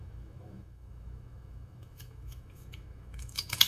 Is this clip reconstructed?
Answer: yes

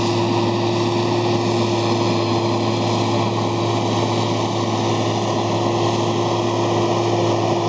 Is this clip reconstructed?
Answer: no